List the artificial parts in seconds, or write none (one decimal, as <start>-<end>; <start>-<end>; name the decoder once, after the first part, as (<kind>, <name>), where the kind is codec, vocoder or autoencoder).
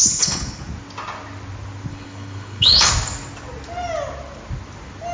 0.0-0.6 (codec, HILCodec); 1.9-2.9